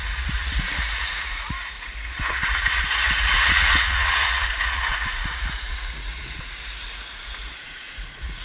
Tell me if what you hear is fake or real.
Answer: fake